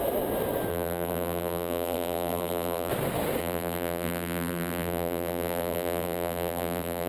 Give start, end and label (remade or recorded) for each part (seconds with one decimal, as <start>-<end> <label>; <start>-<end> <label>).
0.0-0.7 recorded; 0.7-2.9 remade; 2.9-3.4 recorded; 3.4-7.1 remade